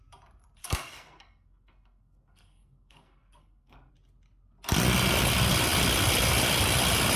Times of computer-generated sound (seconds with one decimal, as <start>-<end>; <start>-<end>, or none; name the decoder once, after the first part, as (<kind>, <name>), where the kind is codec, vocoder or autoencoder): 0.6-3.9 (codec, SNAC)